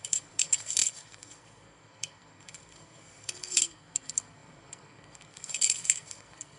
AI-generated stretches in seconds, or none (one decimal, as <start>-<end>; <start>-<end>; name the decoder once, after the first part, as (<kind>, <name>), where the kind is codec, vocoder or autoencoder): 0.0-6.6 (codec, SNAC)

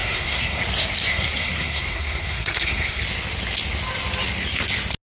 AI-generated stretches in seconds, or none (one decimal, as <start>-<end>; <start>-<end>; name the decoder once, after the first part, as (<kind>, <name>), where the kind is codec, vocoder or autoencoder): 0.0-0.6 (codec, SNAC); 1.1-3.0

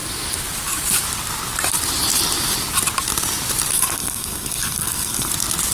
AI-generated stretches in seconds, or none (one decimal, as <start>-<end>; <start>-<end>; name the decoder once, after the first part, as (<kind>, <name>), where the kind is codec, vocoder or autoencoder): 3.7-5.3 (codec, SNAC)

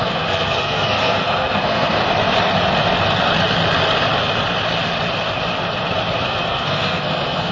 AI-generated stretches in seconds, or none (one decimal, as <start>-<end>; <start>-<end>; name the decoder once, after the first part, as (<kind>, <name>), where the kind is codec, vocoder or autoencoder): 0.0-2.0 (codec, SNAC); 6.2-7.5

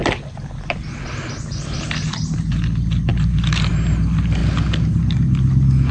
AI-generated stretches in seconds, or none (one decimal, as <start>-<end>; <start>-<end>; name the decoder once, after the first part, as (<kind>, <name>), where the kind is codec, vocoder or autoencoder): none

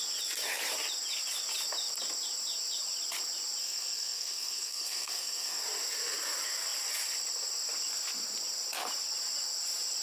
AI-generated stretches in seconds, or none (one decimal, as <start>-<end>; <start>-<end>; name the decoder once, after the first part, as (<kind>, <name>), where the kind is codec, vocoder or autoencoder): 3.6-5.6 (codec, SNAC)

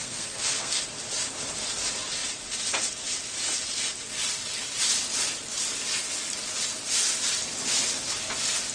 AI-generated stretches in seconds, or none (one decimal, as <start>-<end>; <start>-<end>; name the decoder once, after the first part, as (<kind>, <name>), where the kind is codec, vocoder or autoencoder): 0.0-0.8 (codec, SNAC)